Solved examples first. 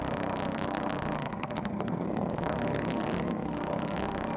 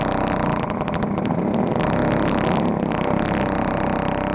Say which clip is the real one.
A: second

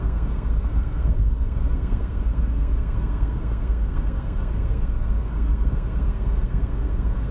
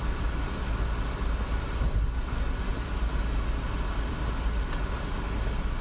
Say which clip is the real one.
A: second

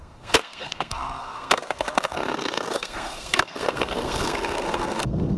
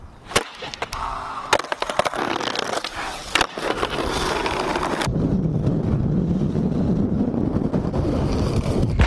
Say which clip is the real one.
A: second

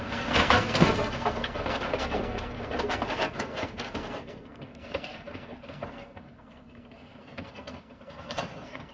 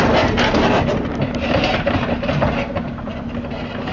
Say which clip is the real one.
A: second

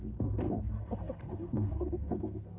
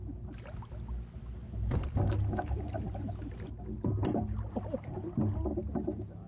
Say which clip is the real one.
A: second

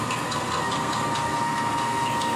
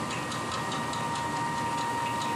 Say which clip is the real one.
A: second